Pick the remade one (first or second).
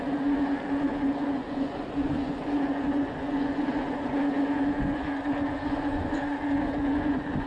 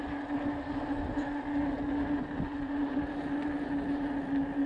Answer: first